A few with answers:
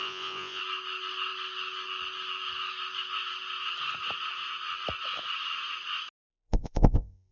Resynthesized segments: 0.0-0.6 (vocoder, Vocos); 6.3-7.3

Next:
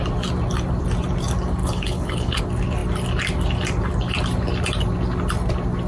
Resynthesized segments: 1.6-2.4 (codec, HILCodec)

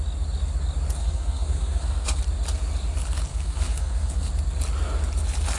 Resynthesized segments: 1.0-2.2 (codec, SNAC); 3.3-4.3